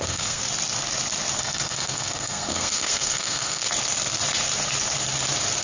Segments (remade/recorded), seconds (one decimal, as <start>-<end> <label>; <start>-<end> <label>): 0.0-0.4 remade; 0.4-1.4 recorded; 1.4-3.6 remade; 3.6-5.6 recorded